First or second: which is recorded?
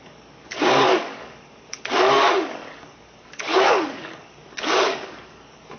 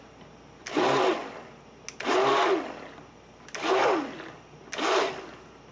second